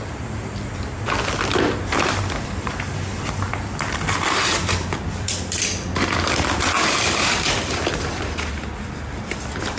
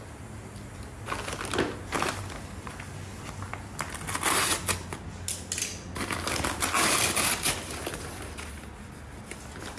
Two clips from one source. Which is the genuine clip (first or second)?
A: second